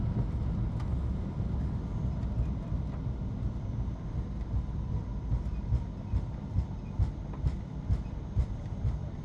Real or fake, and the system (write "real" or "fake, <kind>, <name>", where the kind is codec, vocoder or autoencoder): real